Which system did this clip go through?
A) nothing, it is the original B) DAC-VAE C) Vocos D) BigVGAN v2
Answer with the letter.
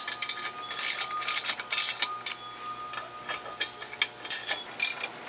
A